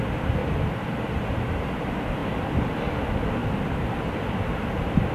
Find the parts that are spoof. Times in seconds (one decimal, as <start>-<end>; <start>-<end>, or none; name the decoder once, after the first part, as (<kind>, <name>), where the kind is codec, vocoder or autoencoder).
none